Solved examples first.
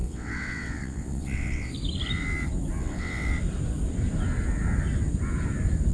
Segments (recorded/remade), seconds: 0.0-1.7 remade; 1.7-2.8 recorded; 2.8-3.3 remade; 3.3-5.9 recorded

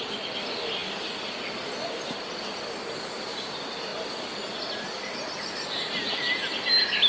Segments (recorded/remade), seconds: 0.0-7.1 recorded

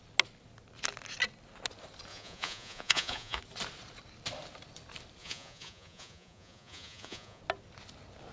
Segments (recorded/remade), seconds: 0.0-2.1 recorded; 2.1-3.4 remade; 3.4-5.2 recorded; 5.2-7.4 remade; 7.4-8.3 recorded

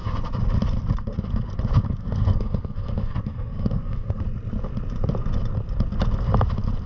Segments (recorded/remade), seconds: 0.0-2.0 recorded; 2.0-4.2 remade; 4.2-6.9 recorded